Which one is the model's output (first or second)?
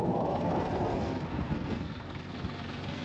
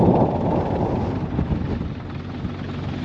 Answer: first